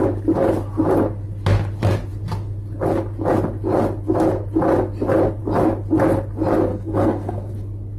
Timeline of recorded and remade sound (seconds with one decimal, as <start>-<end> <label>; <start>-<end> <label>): 0.0-6.7 recorded; 6.7-7.5 remade; 7.5-8.0 recorded